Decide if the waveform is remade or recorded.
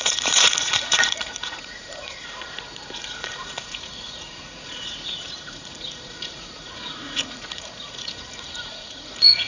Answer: remade